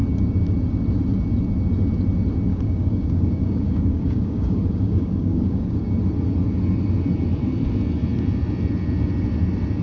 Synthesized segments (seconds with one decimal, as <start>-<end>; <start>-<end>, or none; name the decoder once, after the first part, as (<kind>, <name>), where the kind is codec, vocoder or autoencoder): 2.5-5.9 (codec, DAC)